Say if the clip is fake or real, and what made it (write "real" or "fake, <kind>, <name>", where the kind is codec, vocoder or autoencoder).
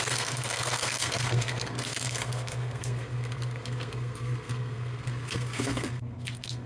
fake, codec, SNAC